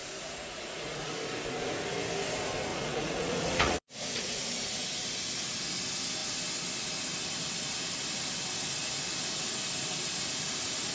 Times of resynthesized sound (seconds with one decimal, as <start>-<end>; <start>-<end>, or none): 0.0-1.1; 2.7-4.4